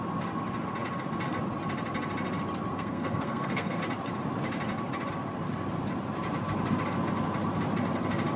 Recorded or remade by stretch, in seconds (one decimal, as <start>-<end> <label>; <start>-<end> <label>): 0.0-2.7 recorded; 2.7-3.8 remade; 3.8-8.4 recorded